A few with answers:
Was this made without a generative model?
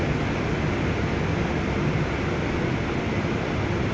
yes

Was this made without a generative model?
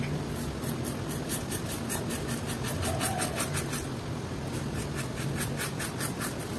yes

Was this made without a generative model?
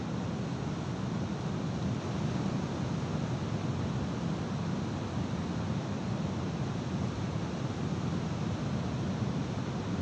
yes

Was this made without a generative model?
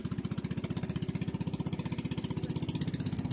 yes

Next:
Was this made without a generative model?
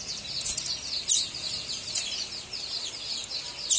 yes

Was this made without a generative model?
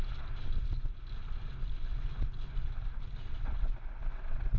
yes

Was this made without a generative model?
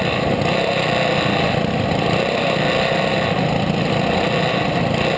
yes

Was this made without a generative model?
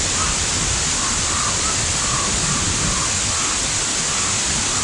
yes